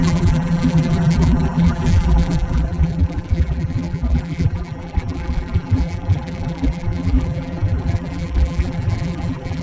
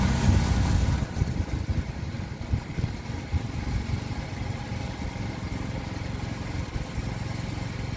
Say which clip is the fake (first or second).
first